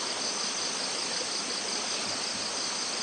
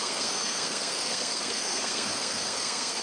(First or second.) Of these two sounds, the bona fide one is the first